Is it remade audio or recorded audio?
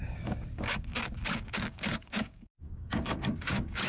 remade